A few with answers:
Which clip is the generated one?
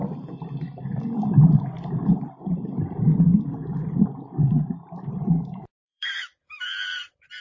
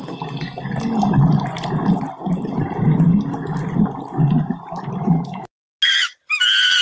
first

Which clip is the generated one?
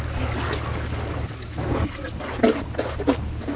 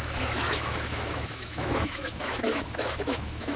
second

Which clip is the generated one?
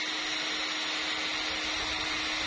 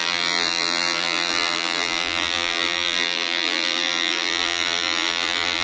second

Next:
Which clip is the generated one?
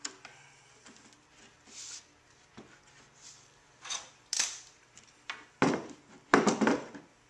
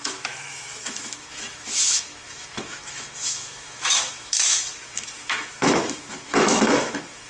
second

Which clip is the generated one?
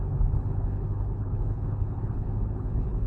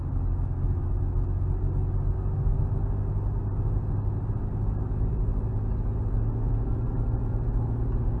first